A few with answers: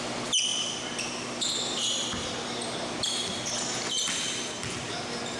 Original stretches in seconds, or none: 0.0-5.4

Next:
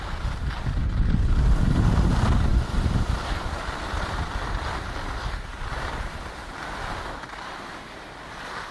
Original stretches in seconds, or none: 0.0-2.5; 5.9-8.7